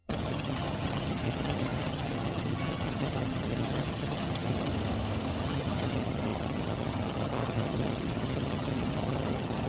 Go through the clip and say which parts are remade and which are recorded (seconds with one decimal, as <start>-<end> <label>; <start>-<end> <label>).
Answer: 0.0-4.7 remade; 4.7-5.4 recorded; 5.4-9.7 remade